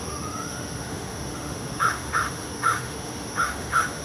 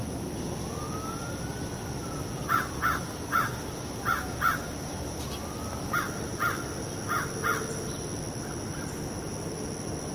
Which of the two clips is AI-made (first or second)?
first